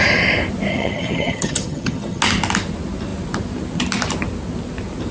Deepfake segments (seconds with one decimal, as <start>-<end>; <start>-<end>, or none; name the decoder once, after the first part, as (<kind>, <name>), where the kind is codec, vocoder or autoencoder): 0.7-2.2 (vocoder, HiFi-GAN)